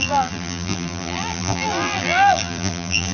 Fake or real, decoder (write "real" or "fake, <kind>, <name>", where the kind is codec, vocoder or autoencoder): fake, vocoder, BigVGAN v2